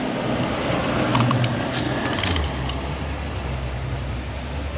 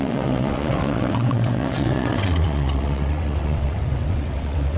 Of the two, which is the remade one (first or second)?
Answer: second